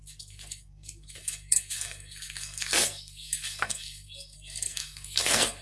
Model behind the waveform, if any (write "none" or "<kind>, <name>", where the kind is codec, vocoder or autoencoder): codec, SNAC